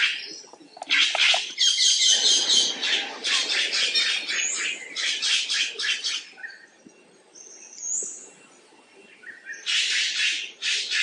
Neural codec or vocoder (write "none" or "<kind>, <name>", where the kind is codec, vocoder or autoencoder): none